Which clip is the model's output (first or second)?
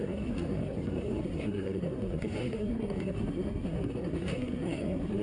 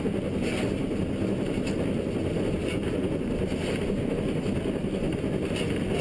first